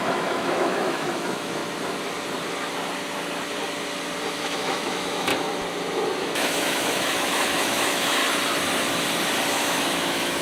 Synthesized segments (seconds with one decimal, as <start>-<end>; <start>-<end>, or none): 0.0-1.6; 4.3-5.3; 6.2-8.2; 9.5-10.4